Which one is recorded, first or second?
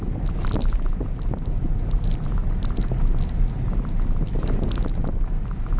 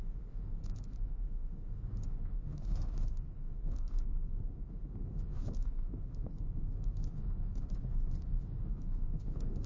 first